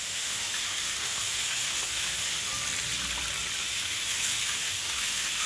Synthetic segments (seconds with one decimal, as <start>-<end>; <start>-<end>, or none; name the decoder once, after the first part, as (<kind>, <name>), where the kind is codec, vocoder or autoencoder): 0.0-2.5 (autoencoder, DAC-VAE); 3.6-5.5